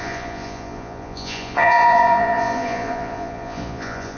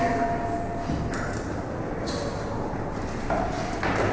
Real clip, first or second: second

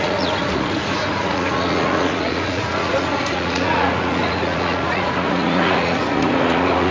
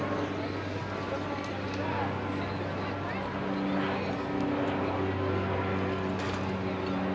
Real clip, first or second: second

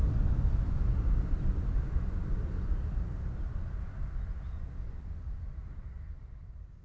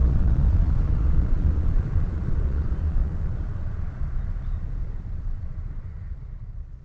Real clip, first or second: first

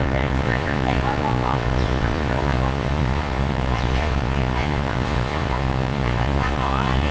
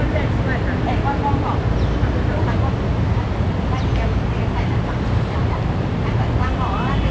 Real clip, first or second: second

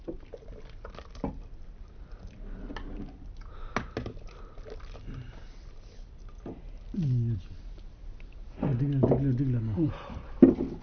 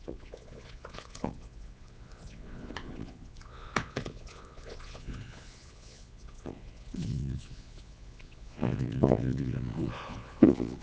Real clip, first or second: first